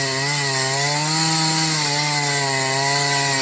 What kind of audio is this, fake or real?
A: real